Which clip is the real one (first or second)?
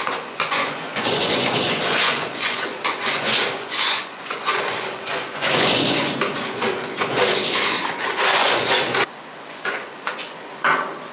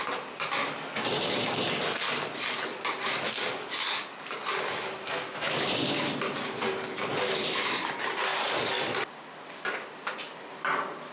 second